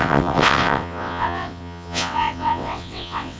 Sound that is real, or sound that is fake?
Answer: fake